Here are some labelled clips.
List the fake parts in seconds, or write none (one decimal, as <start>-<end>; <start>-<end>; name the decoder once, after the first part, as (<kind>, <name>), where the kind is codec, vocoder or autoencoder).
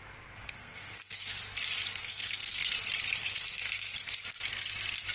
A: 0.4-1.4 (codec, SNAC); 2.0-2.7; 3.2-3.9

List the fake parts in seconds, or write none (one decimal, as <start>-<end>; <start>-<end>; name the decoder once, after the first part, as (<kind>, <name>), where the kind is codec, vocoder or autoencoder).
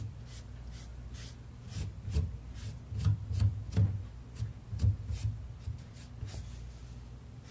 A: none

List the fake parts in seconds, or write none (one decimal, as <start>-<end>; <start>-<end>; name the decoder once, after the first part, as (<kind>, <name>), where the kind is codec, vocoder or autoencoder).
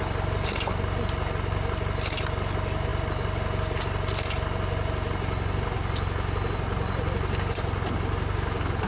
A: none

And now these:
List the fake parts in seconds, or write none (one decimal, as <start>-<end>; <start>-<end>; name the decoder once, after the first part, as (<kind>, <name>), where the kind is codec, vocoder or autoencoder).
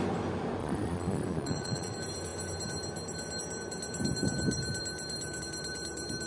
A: 0.6-1.9 (vocoder, Vocos)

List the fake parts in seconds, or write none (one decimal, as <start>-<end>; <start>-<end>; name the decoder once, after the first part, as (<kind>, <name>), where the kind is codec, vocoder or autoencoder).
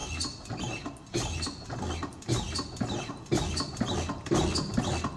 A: none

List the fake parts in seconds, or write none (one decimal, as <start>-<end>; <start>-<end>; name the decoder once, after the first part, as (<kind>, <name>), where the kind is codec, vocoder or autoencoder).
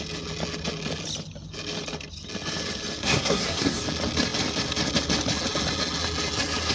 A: 3.0-3.8 (codec, SNAC)